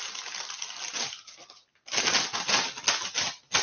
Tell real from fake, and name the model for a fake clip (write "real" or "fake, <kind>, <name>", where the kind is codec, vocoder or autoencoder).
real